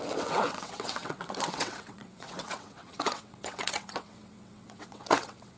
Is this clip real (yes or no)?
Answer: no